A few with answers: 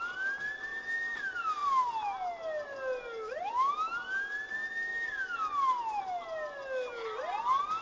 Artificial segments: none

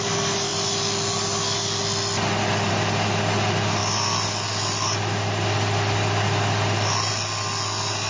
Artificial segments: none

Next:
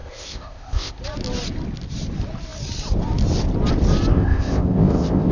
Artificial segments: 0.0-1.0 (codec, ZipCodec); 4.1-5.3

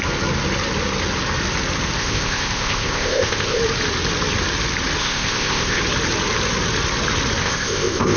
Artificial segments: 2.0-3.6 (codec, ZipCodec); 5.0-5.8; 7.4-8.2